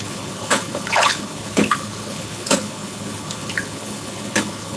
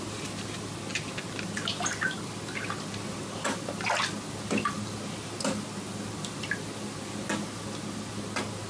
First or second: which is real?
second